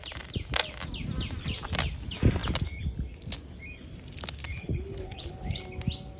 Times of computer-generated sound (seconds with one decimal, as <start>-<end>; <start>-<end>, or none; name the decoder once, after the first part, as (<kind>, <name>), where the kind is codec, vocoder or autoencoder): 4.5-5.6 (codec, HILCodec)